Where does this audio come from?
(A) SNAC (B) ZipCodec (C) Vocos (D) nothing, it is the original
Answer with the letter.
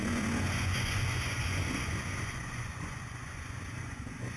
C